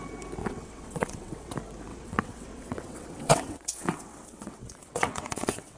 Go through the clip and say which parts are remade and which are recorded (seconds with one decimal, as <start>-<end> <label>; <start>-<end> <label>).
0.0-0.4 recorded; 0.4-1.5 remade; 1.5-1.9 recorded; 1.9-5.8 remade